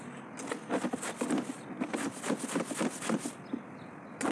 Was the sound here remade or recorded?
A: recorded